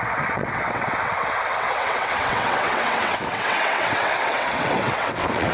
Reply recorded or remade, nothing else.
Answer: remade